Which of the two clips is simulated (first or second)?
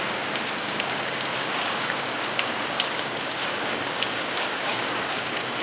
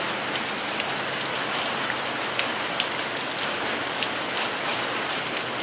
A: first